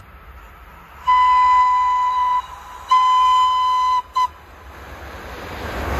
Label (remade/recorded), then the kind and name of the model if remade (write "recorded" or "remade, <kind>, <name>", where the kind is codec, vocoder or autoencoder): recorded